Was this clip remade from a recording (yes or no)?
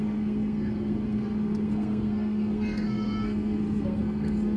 yes